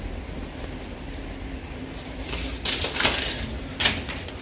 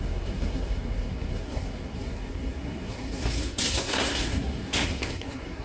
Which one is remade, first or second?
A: second